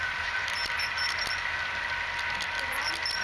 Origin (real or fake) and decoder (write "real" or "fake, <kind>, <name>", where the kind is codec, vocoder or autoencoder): real